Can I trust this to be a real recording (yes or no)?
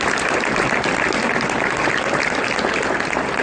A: yes